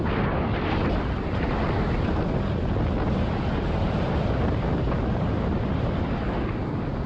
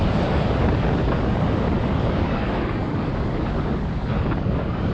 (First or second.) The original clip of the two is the first